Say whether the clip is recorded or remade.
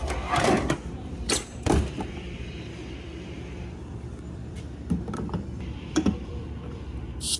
remade